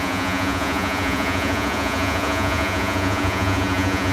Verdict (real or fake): fake